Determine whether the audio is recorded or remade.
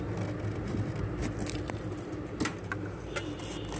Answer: recorded